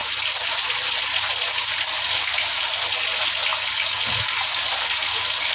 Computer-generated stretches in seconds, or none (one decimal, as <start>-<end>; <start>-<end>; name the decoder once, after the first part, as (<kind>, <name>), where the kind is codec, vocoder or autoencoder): none